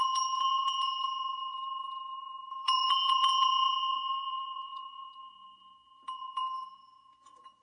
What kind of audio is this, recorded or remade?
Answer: remade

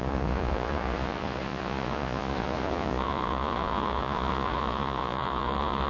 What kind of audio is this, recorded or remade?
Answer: remade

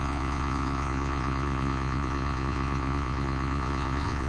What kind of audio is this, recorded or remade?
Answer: remade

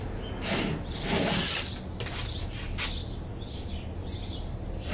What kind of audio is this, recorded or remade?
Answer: recorded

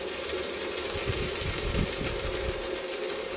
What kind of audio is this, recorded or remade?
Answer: recorded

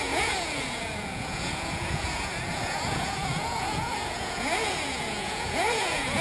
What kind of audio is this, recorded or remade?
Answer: remade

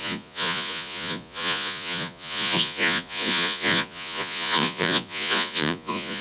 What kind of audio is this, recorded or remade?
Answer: remade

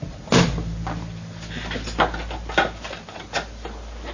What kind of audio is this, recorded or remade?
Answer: recorded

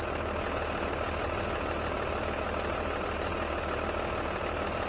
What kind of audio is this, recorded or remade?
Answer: recorded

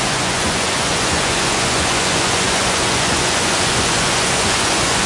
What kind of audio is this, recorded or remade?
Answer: remade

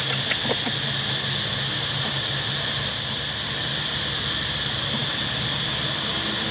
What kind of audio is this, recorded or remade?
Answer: recorded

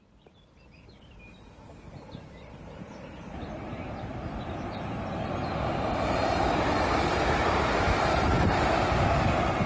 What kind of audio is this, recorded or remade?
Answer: recorded